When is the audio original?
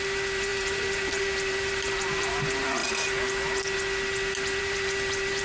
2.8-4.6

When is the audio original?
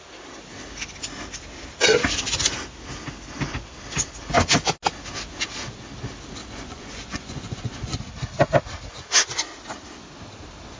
0.0-6.4; 8.0-10.8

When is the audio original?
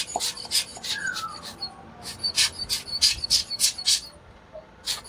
0.0-5.1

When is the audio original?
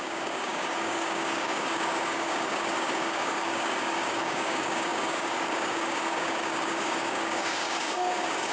none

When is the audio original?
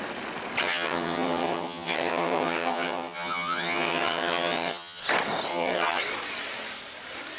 0.0-0.6; 5.0-5.5; 6.0-7.4